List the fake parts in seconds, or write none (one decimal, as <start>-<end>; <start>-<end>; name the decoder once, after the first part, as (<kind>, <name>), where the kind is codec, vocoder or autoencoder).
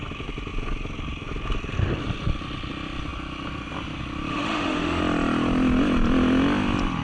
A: 4.3-5.0 (autoencoder, DAC-VAE)